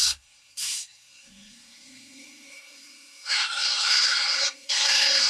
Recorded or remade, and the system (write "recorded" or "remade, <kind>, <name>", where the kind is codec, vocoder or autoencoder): remade, codec, SNAC